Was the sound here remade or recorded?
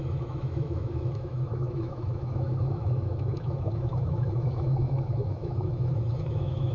remade